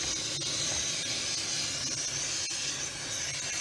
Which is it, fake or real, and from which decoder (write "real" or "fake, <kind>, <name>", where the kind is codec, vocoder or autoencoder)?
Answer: real